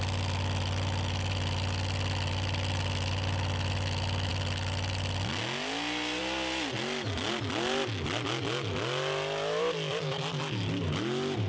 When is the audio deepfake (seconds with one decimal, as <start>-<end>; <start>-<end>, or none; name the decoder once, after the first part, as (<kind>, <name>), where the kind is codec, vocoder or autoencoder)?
none